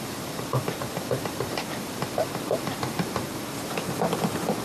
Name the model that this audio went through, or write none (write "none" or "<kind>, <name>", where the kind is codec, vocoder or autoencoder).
vocoder, BigVGAN v2